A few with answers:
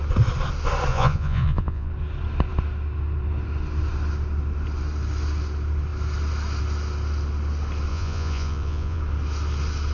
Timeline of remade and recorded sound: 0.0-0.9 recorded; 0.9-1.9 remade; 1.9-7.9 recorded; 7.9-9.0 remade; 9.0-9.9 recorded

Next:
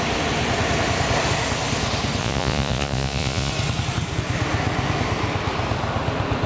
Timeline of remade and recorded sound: 0.0-2.2 recorded; 2.2-3.5 remade; 3.5-6.5 recorded

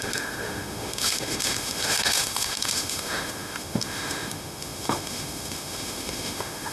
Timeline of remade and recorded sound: 0.0-6.7 remade

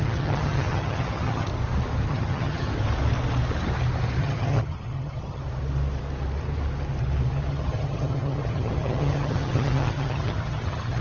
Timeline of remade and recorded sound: 0.0-1.5 remade; 1.5-2.1 recorded; 2.1-2.7 remade; 2.7-4.2 recorded; 4.2-5.4 remade; 5.4-7.5 recorded; 7.5-11.0 remade

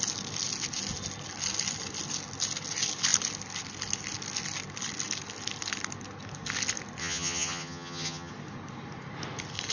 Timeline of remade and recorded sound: 0.0-7.0 recorded; 7.0-8.3 remade; 8.3-9.7 recorded

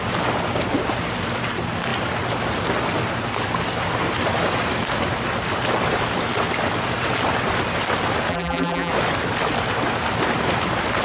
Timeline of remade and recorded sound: 0.0-8.3 recorded; 8.3-8.9 remade; 8.9-11.0 recorded